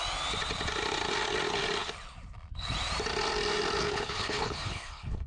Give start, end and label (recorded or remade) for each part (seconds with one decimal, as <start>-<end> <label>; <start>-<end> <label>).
0.0-3.8 recorded; 3.8-5.3 remade